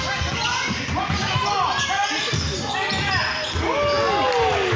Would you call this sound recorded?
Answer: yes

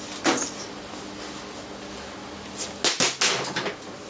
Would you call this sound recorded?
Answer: yes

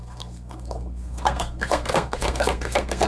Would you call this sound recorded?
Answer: no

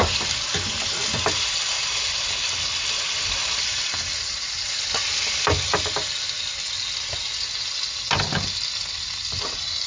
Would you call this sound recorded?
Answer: yes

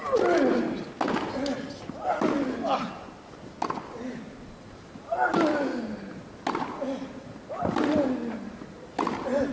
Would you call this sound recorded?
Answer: yes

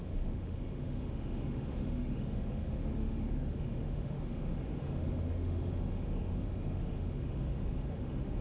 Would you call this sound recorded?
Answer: no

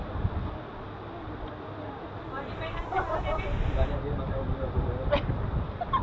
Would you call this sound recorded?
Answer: yes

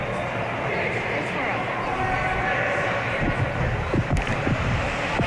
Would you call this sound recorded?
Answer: yes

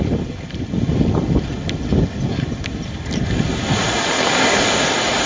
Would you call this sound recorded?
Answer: yes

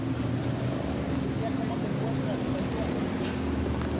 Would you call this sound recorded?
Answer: yes